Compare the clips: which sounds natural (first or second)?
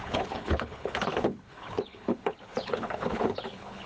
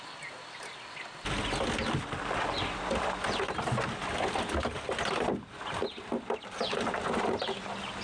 second